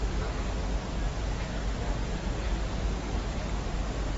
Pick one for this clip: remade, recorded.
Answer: recorded